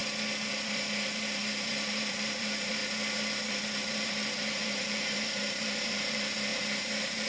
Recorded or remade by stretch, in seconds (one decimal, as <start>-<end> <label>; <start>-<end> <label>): 0.0-0.5 recorded; 0.5-2.8 remade; 2.8-3.5 recorded; 3.5-7.3 remade

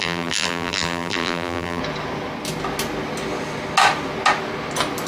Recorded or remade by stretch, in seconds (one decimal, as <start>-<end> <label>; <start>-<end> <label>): 0.0-1.8 remade; 1.8-5.1 recorded

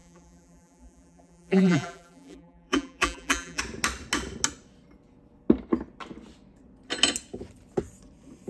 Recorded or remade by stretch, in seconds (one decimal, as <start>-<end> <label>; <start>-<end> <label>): 0.0-3.6 remade; 3.6-8.5 recorded

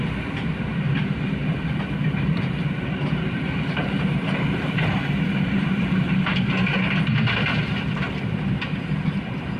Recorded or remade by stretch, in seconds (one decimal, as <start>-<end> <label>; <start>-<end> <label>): 0.0-1.4 recorded; 1.4-6.4 remade; 6.4-9.6 recorded

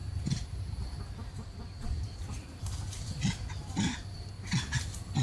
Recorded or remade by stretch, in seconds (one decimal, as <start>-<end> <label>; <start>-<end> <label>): 0.0-5.2 recorded